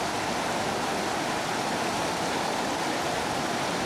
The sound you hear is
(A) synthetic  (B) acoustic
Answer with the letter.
B